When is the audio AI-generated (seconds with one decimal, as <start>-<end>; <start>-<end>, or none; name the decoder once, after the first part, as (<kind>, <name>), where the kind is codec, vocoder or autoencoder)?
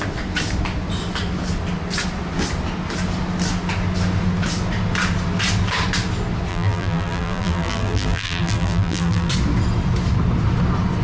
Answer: 6.5-9.3 (vocoder, BigVGAN v2)